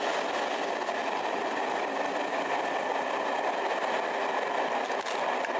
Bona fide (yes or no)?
yes